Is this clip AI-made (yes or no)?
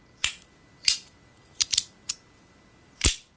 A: no